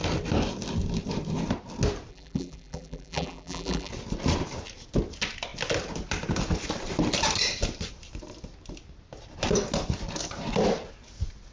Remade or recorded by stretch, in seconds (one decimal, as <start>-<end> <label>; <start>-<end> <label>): 0.0-2.1 recorded; 2.1-3.9 remade; 3.9-11.5 recorded